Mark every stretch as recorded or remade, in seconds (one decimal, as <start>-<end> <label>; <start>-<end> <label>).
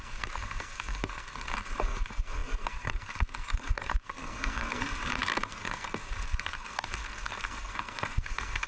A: 0.0-8.7 remade